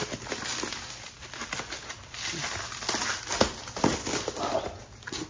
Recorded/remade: recorded